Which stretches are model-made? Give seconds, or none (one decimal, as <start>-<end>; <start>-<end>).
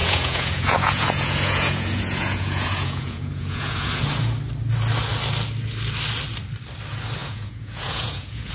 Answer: 0.0-4.0; 7.2-8.5